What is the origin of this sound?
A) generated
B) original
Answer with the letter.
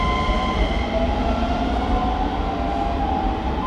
B